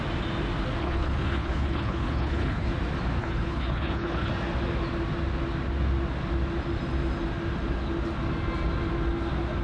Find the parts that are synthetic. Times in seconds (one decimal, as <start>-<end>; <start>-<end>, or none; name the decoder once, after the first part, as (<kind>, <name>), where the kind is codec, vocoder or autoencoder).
0.8-2.7 (codec, HILCodec); 3.2-4.3